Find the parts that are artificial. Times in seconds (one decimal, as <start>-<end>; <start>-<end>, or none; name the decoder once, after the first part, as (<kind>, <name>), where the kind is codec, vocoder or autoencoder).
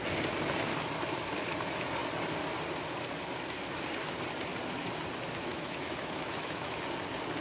5.5-6.7 (autoencoder, DAC-VAE)